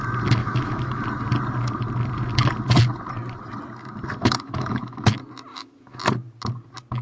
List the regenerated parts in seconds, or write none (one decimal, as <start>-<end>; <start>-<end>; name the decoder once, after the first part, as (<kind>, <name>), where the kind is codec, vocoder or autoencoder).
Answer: 0.4-1.0 (autoencoder, DAC-VAE); 4.2-5.1; 5.5-6.0